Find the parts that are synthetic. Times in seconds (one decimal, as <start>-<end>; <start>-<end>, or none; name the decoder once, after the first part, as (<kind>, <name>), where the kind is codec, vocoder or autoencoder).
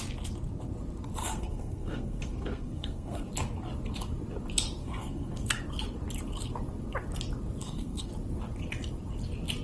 1.2-3.3 (codec, SNAC); 4.8-5.6; 7.6-8.1